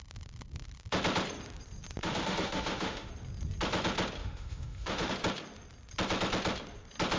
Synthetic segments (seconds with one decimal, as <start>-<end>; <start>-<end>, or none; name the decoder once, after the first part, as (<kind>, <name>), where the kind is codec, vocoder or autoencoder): 2.0-3.1 (autoencoder, DAC-VAE); 4.2-5.1